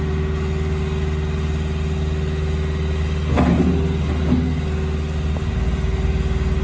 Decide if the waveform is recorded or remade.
recorded